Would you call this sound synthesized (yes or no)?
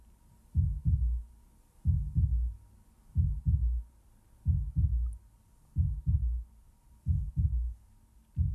no